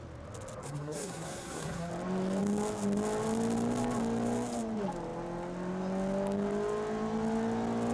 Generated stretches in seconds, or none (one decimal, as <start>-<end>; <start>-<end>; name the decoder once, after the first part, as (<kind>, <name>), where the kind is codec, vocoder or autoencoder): 0.6-1.9 (codec, SNAC)

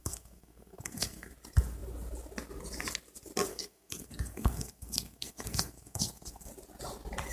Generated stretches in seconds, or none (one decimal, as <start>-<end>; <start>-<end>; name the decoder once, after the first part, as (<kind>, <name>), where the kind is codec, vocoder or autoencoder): 0.0-1.3 (codec, SNAC); 3.5-6.5

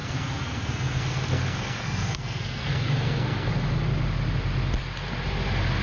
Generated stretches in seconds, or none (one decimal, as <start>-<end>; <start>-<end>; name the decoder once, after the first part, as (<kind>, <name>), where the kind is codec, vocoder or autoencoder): 0.0-3.5 (codec, SNAC)

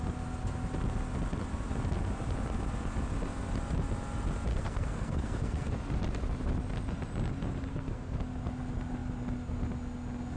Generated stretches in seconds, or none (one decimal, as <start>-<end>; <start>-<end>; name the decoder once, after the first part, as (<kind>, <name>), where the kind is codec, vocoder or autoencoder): 4.5-5.7 (codec, SNAC); 7.7-8.2

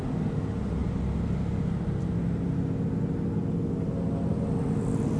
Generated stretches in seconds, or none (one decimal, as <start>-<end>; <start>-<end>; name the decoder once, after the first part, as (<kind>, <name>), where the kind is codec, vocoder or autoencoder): none

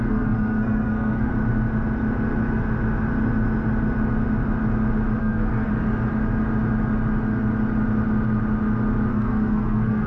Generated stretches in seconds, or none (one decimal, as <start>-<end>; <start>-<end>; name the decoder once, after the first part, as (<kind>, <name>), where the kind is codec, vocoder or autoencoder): 0.0-1.3 (codec, SNAC); 5.2-5.7; 9.1-10.1

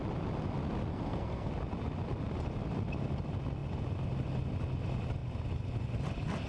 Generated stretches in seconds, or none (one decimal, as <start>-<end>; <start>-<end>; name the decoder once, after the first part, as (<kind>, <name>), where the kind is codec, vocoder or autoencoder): 0.9-1.5 (codec, SNAC)

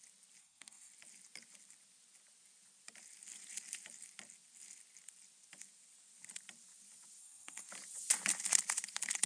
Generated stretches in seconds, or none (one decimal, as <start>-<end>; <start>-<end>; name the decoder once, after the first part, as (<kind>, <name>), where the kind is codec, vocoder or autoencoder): 0.4-0.9 (codec, SNAC); 7.2-7.7